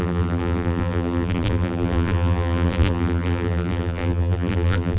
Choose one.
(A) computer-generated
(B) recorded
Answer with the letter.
A